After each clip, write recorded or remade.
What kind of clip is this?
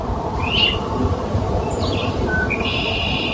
remade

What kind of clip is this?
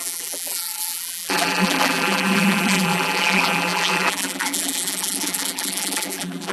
remade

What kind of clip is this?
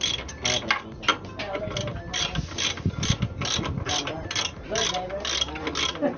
recorded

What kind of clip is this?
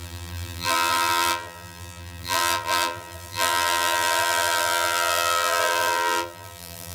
remade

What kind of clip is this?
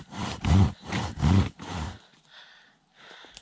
remade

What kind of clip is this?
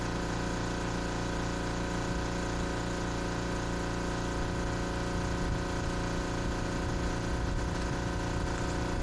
recorded